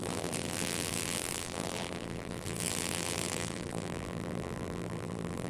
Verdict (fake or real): fake